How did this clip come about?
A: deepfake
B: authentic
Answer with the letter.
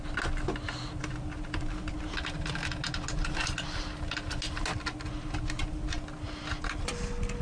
B